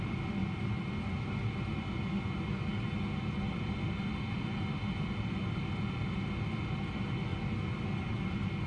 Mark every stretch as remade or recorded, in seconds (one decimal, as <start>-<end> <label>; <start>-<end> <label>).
0.0-8.7 recorded